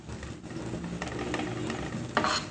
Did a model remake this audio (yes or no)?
no